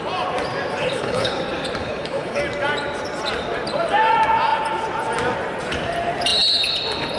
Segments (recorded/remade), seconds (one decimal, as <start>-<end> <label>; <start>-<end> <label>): 0.0-0.8 recorded; 0.8-1.4 remade; 1.4-1.8 recorded; 1.8-2.4 remade; 2.4-7.2 recorded